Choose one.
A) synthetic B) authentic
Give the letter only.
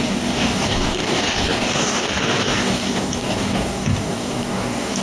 A